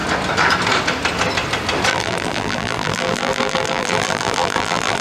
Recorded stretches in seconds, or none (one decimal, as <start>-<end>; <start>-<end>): 0.0-1.9